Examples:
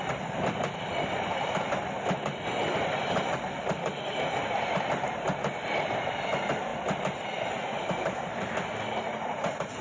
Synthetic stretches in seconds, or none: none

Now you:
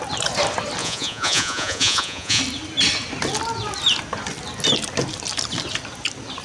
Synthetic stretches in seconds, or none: 0.8-2.4 (vocoder, Vocos)

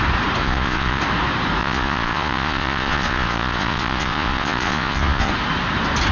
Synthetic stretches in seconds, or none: 0.4-1.0 (vocoder, Vocos); 1.6-5.3

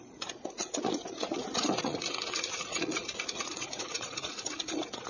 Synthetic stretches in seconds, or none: 0.0-5.1 (vocoder, Vocos)

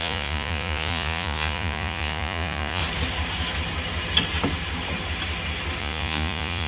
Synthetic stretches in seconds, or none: 0.0-2.8 (vocoder, Vocos); 5.8-6.7

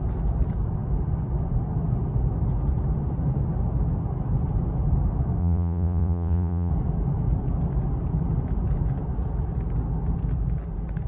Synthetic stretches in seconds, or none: 5.4-6.7 (vocoder, Vocos)